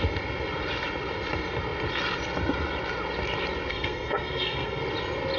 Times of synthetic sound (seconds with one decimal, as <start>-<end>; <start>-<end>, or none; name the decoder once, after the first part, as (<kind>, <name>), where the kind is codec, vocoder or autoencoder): 3.7-4.8 (codec, SNAC)